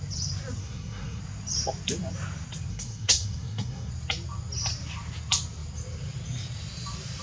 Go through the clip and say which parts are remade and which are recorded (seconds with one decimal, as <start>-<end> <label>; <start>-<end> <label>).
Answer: 0.0-0.6 recorded; 0.6-1.2 remade; 1.2-2.7 recorded; 2.7-3.9 remade; 3.9-7.2 recorded